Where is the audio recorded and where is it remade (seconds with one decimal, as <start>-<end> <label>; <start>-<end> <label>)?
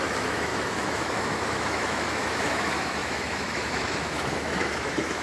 0.0-5.2 remade